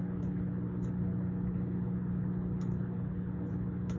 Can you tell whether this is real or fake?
fake